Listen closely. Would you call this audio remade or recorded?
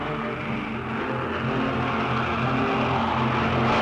recorded